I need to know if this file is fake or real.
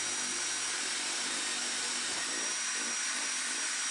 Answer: real